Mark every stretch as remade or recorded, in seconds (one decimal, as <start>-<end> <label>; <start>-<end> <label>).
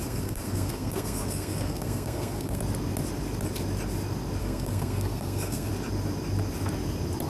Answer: 0.0-2.6 remade; 2.6-4.4 recorded; 4.4-5.7 remade; 5.7-7.3 recorded